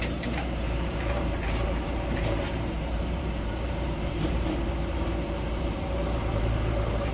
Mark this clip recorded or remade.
remade